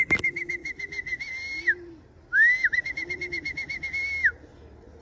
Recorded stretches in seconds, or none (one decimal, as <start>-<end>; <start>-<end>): 0.0-5.0